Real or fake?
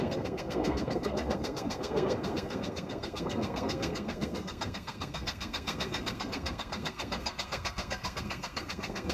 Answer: fake